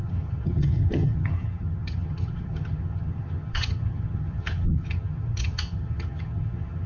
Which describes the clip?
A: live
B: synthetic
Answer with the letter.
B